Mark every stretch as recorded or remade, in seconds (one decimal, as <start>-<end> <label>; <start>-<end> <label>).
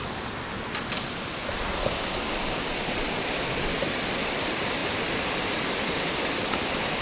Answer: 0.0-7.0 remade